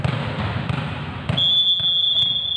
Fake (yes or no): no